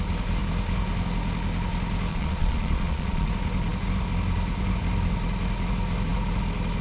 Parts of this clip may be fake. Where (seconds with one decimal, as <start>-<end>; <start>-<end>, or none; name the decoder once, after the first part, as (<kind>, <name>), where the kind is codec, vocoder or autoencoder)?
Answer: 2.1-3.3 (vocoder, Vocos)